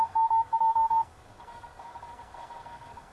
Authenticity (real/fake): fake